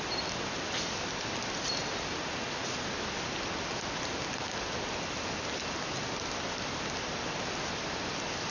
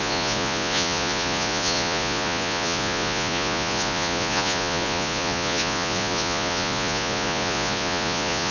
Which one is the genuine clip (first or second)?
first